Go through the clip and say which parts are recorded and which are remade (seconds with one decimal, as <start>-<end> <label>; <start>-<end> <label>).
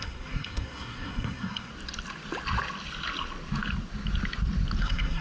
0.0-1.7 remade; 1.7-4.8 recorded; 4.8-5.2 remade